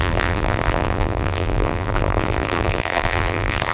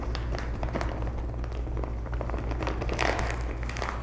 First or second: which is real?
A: second